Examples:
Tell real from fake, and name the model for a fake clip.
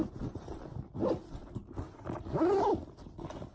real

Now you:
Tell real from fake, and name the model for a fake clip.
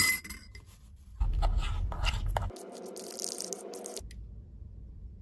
real